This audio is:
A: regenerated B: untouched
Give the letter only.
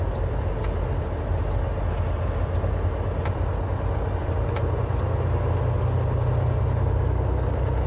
B